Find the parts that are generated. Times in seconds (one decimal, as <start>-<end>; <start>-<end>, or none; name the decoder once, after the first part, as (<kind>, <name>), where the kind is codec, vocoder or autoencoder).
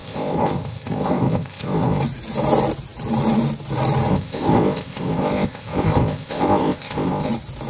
0.0-2.0 (codec, ZipCodec); 4.1-7.3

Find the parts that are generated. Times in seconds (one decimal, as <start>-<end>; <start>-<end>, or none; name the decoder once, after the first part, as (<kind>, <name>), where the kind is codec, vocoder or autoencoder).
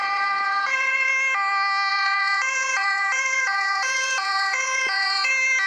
0.0-1.1 (vocoder, Vocos); 1.9-5.3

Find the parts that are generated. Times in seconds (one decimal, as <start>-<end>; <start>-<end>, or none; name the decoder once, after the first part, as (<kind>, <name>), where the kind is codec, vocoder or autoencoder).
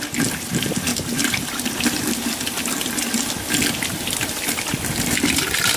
none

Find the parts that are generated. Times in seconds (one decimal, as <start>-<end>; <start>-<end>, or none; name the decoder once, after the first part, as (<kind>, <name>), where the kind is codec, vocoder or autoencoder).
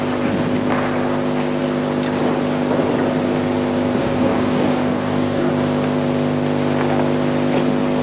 4.0-5.5 (codec, DAC)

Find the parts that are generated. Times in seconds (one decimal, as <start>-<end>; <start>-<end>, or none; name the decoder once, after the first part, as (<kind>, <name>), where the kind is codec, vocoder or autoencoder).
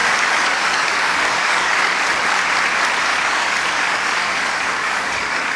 0.0-2.4 (codec, DAC); 3.1-5.6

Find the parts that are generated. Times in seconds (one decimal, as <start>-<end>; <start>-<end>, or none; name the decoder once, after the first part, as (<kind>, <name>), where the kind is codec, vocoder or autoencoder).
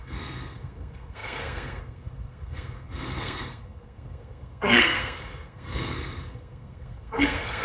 0.0-7.6 (codec, SNAC)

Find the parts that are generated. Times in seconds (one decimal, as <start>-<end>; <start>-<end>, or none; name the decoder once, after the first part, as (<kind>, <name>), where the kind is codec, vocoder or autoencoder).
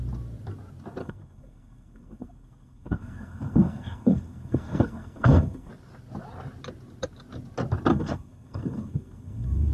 1.0-5.7 (codec, SNAC); 7.9-9.7